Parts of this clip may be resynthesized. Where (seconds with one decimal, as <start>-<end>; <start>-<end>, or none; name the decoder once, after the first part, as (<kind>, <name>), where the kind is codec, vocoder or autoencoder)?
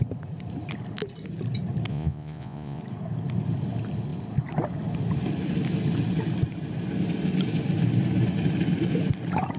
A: 1.9-2.8 (vocoder, Vocos)